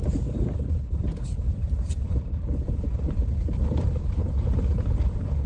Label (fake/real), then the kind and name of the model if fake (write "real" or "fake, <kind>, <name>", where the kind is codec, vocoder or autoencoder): fake, vocoder, BigVGAN v2